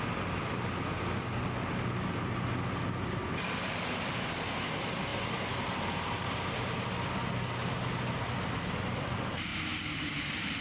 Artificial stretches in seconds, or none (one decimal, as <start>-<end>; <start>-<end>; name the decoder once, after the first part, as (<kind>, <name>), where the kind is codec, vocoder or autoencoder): none